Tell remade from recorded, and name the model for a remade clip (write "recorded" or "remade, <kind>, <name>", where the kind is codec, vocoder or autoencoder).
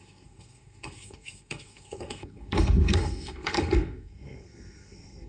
remade, codec, SNAC